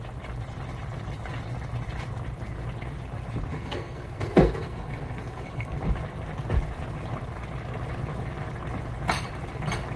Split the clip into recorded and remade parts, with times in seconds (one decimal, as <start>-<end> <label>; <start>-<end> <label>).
0.0-3.5 recorded; 3.5-5.8 remade; 5.8-10.0 recorded